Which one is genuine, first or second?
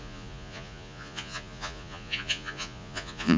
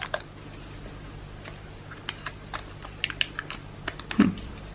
second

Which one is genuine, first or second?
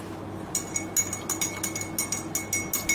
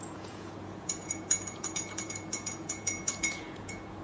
first